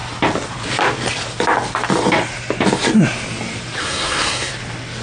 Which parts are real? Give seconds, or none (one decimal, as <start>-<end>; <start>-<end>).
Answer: 0.0-3.8; 4.5-5.0